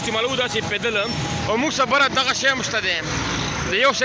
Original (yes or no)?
yes